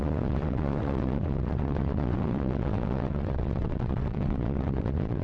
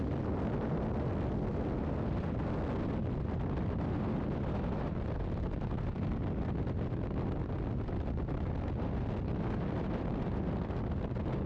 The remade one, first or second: first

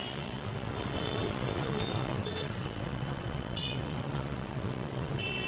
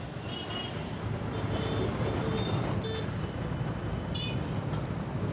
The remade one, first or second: first